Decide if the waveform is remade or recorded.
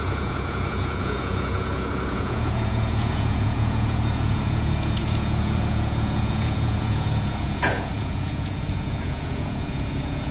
remade